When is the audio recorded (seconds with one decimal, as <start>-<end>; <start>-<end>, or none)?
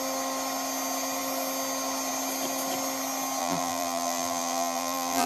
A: 0.0-3.4